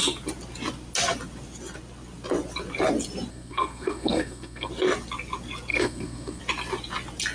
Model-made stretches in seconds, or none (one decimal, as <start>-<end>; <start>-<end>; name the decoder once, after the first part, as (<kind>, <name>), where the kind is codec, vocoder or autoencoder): 3.3-4.7 (codec, SNAC); 5.7-6.4